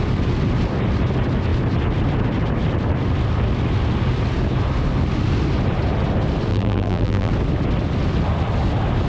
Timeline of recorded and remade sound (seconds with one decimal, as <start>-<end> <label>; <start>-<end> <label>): 0.0-6.5 recorded; 6.5-7.3 remade; 7.3-9.1 recorded